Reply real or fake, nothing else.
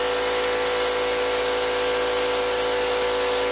real